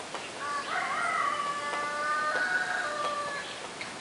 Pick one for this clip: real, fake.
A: real